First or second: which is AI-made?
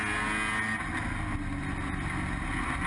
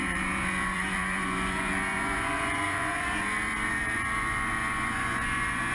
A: second